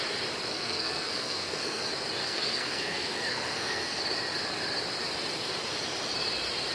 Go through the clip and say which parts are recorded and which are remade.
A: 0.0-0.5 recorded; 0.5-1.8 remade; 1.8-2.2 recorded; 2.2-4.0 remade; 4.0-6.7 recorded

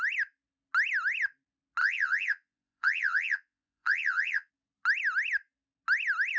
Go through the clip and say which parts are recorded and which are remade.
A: 0.0-1.8 recorded; 1.8-4.5 remade; 4.5-6.4 recorded